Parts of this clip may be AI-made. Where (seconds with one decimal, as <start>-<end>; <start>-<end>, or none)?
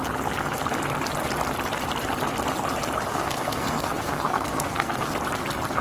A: 3.1-5.1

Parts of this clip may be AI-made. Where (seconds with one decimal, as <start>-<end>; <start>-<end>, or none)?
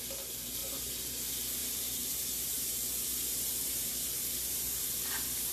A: 0.6-1.2; 1.6-4.9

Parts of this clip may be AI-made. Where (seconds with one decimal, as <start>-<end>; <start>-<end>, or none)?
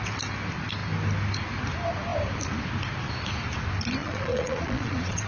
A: 4.0-5.3